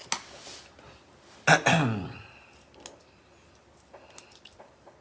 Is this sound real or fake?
real